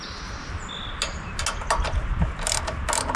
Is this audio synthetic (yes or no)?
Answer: no